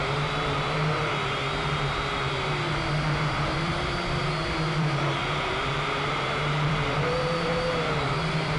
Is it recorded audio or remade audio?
remade